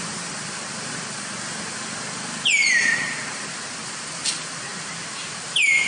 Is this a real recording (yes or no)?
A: yes